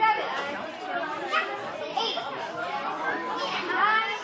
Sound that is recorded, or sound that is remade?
recorded